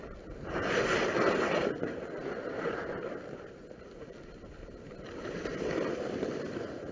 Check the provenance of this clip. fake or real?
real